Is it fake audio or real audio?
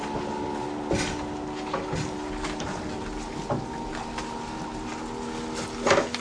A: real